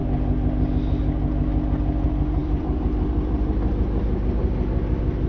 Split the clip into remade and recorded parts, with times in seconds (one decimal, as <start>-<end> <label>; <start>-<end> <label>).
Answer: 0.0-2.4 recorded; 2.4-3.7 remade; 3.7-5.3 recorded